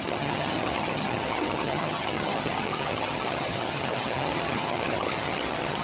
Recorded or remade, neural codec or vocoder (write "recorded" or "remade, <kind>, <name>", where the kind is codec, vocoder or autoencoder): remade, vocoder, HiFi-GAN